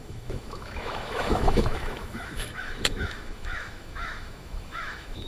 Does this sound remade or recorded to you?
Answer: remade